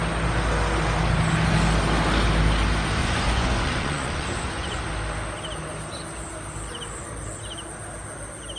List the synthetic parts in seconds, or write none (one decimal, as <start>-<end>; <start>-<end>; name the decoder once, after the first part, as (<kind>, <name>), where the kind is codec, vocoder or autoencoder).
3.0-4.8 (vocoder, Vocos)